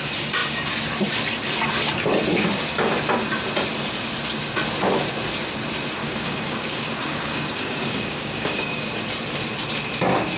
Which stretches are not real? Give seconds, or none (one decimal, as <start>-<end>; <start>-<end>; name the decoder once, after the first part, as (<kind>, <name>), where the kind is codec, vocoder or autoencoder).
6.0-8.9 (codec, DAC)